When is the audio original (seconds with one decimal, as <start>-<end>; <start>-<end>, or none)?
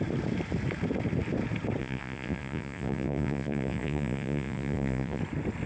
0.0-1.8; 5.2-5.7